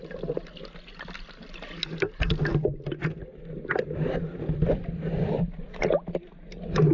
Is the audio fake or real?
real